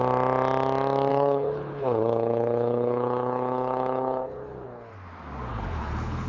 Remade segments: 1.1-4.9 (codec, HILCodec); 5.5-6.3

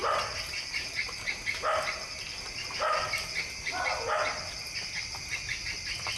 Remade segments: none

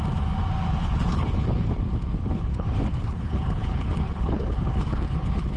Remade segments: 0.6-1.7 (codec, HILCodec); 2.2-5.6

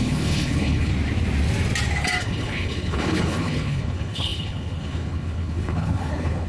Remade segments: 0.0-0.9 (codec, HILCodec); 2.2-6.5

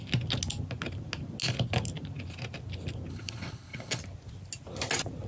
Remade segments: 3.1-4.0 (codec, HILCodec)

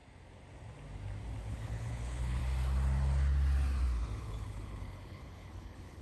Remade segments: 1.5-2.4 (codec, HILCodec); 4.2-6.0